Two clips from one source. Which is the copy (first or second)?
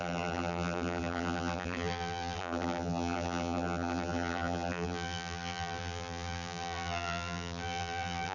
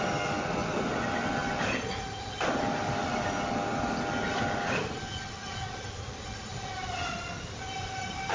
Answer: first